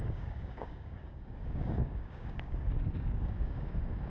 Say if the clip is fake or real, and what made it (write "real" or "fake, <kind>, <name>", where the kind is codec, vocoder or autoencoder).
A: fake, codec, DAC